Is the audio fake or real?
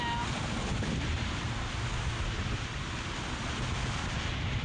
real